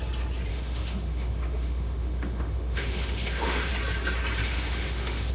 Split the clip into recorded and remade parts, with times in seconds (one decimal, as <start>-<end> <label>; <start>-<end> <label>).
0.0-0.5 recorded; 0.5-3.7 remade; 3.7-4.4 recorded; 4.4-5.3 remade